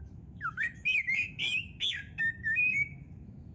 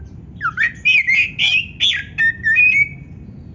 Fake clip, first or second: first